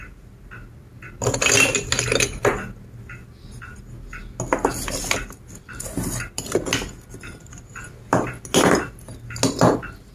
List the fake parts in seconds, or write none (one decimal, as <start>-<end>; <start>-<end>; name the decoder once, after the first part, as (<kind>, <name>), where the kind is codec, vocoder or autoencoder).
none